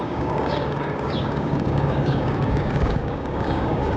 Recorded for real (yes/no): no